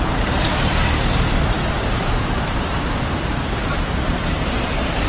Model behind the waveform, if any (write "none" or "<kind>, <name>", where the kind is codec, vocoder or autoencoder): vocoder, BigVGAN v2